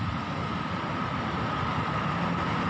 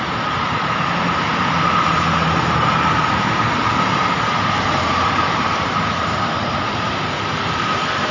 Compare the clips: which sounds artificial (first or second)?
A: second